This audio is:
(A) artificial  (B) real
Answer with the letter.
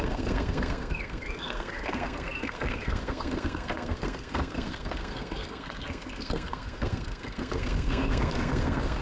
A